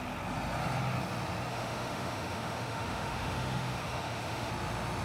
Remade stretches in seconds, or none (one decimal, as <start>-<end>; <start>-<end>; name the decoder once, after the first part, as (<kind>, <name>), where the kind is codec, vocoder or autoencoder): 1.5-4.5 (autoencoder, DAC-VAE)